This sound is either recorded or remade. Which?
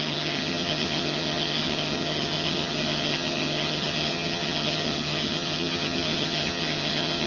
remade